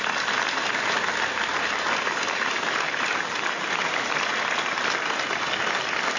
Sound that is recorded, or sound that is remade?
recorded